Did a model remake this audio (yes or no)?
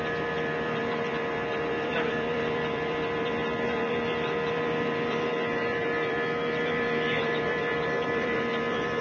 yes